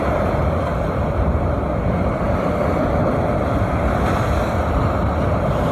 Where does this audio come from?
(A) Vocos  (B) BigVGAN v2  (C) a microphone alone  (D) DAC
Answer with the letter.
C